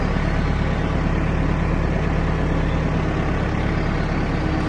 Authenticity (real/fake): real